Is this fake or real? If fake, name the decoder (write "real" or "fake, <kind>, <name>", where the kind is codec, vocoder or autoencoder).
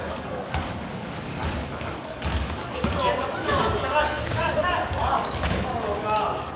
fake, codec, DAC